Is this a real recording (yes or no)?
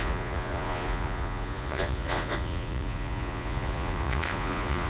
no